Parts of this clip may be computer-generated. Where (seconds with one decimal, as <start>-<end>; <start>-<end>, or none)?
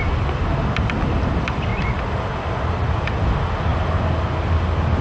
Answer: none